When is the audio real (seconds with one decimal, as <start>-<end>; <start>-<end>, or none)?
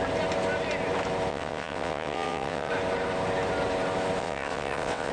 0.0-1.3; 2.7-4.2